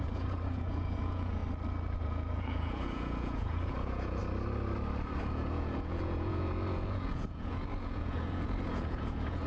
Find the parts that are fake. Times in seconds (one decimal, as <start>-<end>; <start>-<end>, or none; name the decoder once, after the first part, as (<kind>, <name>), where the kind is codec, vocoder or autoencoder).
0.0-1.4 (vocoder, Vocos); 2.0-4.2; 5.2-9.5